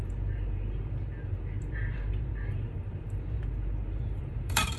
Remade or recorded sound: remade